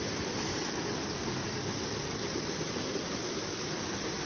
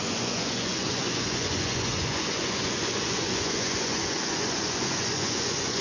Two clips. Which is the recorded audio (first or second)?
first